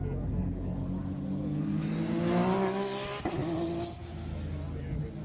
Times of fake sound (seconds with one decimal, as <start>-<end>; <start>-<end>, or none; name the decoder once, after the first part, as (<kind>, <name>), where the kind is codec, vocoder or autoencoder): none